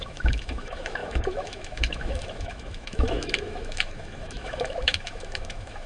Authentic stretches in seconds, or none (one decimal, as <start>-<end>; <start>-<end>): none